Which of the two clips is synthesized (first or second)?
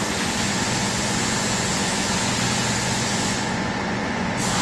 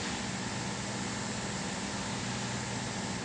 first